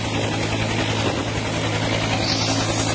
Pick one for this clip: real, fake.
real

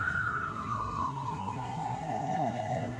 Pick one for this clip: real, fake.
fake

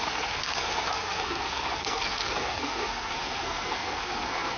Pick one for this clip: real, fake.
fake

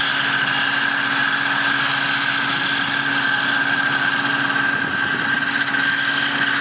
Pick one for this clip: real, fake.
real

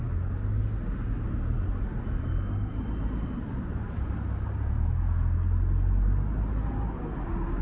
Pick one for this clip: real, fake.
real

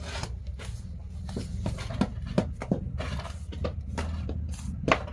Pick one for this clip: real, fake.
real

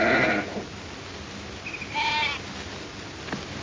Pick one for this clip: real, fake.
real